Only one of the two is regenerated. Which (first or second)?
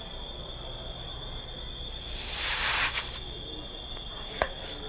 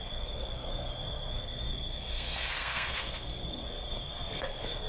second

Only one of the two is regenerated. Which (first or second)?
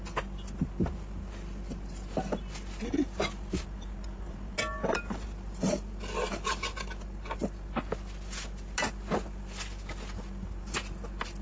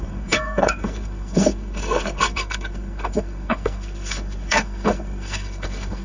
second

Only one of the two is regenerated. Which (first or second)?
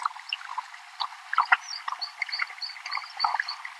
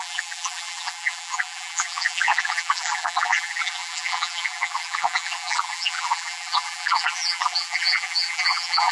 second